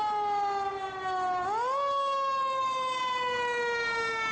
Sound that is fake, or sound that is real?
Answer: real